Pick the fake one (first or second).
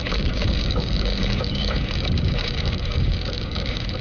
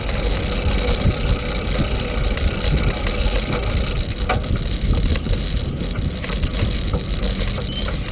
first